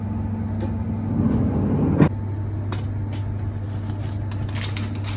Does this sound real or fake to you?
real